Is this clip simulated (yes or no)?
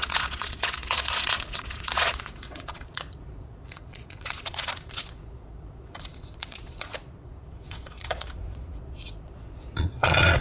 yes